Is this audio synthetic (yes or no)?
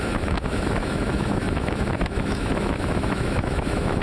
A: yes